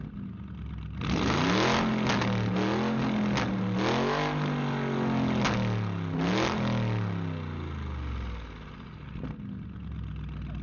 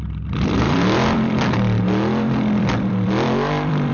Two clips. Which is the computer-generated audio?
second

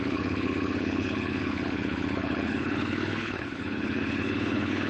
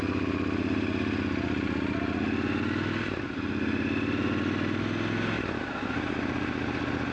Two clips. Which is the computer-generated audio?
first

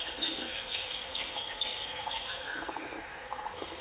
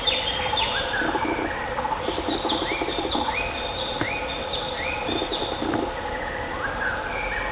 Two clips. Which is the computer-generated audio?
first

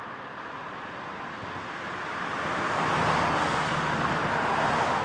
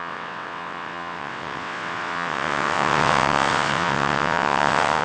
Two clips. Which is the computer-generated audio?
second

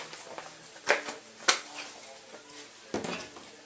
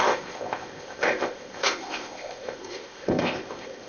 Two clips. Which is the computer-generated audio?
second